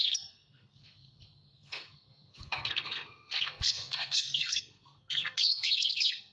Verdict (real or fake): fake